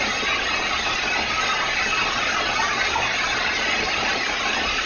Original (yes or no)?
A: yes